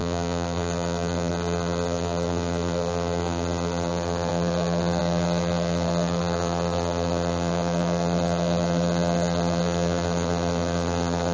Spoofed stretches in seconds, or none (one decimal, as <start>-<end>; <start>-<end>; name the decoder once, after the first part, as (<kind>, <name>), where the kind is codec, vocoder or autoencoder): 0.0-11.3 (vocoder, BigVGAN v2)